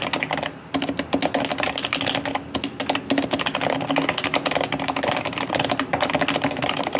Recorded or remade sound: recorded